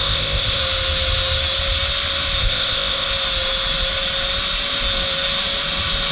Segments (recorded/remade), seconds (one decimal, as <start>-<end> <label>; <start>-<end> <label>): 0.0-0.6 remade; 0.6-2.4 recorded; 2.4-3.1 remade; 3.1-6.1 recorded